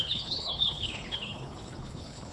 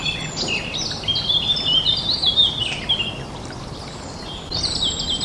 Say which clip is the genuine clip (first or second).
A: second